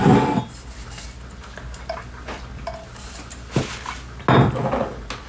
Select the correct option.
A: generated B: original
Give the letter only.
B